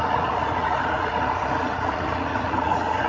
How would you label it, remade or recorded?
remade